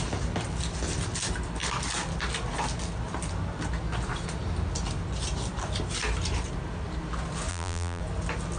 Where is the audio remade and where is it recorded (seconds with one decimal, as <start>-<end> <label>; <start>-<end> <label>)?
0.0-7.5 recorded; 7.5-8.0 remade; 8.0-8.6 recorded